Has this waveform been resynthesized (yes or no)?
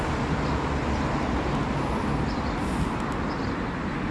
no